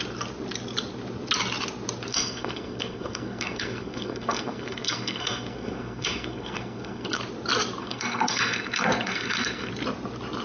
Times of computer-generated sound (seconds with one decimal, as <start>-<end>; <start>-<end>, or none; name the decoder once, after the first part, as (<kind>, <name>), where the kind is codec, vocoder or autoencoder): 2.1-7.2 (codec, SNAC); 7.8-9.7